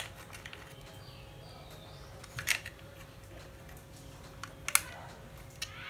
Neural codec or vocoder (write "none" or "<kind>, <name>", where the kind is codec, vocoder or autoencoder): none